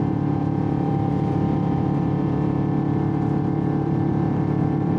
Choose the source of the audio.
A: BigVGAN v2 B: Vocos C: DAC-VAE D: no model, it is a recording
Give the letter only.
A